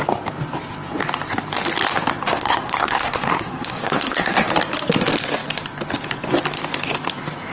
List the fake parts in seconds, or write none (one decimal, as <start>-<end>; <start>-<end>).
2.3-4.5